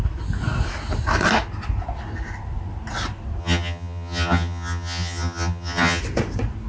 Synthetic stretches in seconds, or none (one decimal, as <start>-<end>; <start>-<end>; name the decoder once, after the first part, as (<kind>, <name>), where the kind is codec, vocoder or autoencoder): 3.4-6.0 (vocoder, HiFi-GAN)